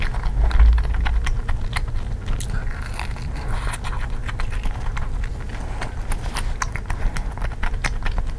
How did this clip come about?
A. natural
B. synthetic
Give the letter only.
A